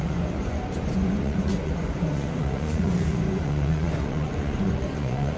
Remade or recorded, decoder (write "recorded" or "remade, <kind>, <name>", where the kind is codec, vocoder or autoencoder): remade, vocoder, Vocos